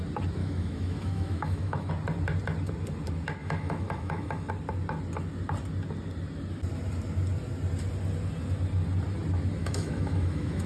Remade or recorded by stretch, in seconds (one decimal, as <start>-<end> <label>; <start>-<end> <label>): 0.0-0.4 recorded; 0.4-1.9 remade; 1.9-3.4 recorded; 3.4-4.5 remade; 4.5-9.6 recorded; 9.6-10.7 remade